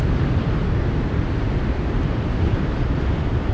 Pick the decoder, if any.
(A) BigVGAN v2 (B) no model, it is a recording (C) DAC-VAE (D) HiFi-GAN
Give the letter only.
B